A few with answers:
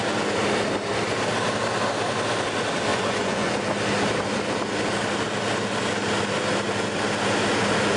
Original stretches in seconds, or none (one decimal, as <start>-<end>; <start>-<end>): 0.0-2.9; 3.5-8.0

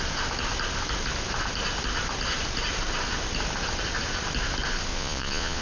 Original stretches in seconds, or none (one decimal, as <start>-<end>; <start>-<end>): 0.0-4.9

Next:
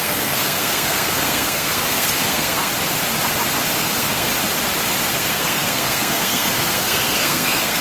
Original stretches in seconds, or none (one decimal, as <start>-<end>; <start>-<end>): 2.7-3.8; 4.3-5.1

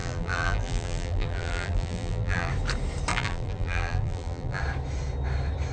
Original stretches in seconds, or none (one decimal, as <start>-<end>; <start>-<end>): 2.5-3.1; 4.6-5.7

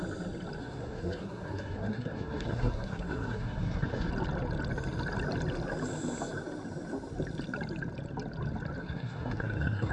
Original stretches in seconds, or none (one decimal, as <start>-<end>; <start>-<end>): 0.0-0.6; 4.1-8.8